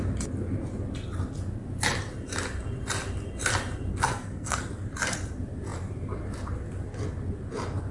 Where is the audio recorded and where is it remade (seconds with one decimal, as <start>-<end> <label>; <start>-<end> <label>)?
0.0-3.9 recorded; 3.9-4.6 remade; 4.6-7.9 recorded